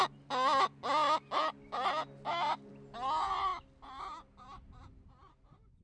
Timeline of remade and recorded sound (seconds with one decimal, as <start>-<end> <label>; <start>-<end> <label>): 0.0-5.8 recorded